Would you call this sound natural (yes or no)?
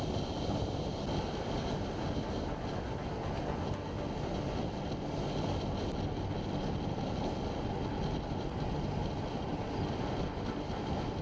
yes